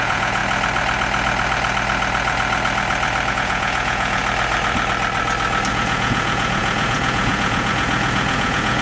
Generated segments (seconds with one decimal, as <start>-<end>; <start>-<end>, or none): 0.0-0.4; 3.3-4.2; 5.7-8.8